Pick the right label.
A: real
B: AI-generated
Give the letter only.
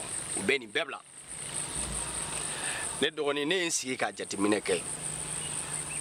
B